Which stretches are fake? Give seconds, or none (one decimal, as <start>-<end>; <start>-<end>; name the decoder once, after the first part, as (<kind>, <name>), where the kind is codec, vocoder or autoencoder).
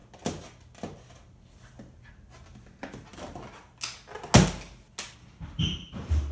3.1-3.7 (vocoder, BigVGAN v2)